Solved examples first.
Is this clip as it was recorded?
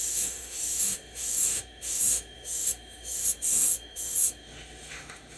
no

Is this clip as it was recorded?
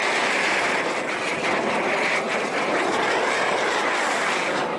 yes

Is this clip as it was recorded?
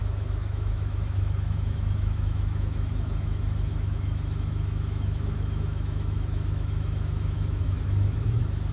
no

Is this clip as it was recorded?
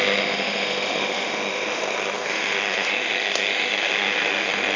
no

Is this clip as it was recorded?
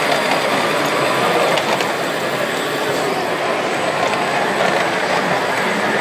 yes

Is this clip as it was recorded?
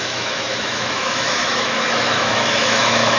no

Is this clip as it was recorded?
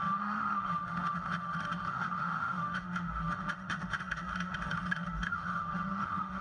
no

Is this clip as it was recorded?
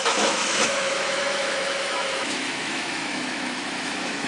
no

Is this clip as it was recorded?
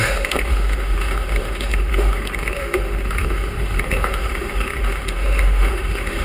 no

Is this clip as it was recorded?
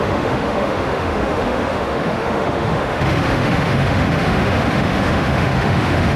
no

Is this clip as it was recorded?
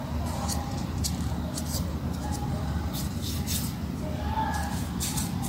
yes